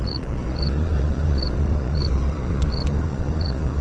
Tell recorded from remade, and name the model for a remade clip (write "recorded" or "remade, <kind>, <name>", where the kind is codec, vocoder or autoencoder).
remade, vocoder, Vocos